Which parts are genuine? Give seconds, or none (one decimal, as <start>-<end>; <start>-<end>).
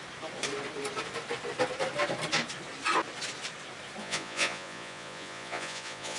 0.0-4.0